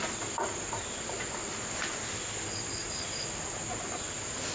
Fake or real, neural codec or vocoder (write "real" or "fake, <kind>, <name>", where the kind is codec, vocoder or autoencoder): real